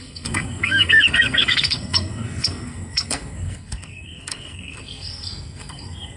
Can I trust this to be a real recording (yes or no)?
no